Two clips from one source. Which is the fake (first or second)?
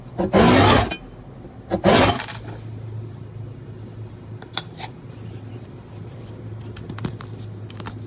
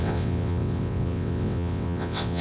second